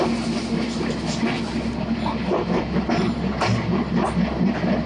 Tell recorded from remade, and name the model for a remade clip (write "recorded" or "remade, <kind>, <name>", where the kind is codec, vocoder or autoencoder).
recorded